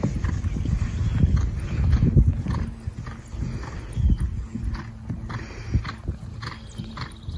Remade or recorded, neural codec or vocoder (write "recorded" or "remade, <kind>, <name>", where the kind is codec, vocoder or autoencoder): recorded